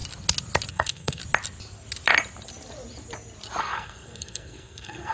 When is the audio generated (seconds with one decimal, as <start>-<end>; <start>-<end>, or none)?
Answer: 0.7-1.2; 3.6-5.1